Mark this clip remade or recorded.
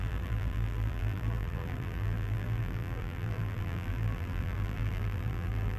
remade